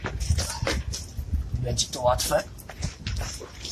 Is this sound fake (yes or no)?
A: no